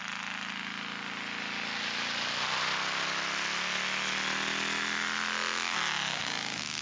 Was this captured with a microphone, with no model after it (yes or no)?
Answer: yes